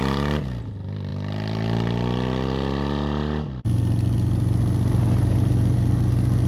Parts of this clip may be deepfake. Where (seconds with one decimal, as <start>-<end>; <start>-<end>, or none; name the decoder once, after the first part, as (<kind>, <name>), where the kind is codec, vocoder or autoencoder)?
none

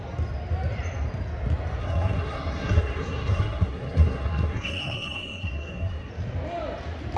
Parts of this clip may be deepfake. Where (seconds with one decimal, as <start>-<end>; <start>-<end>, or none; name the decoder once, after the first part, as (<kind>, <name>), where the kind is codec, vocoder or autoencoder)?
1.8-6.1 (codec, SNAC)

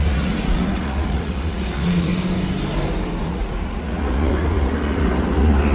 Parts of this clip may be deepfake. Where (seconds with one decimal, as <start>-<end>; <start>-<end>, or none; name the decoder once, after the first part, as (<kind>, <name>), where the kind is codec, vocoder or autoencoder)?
0.0-2.1 (vocoder, Vocos); 3.2-5.7